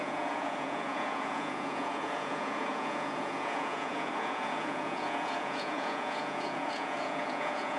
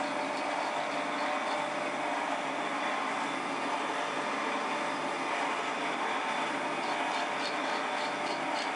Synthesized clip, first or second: first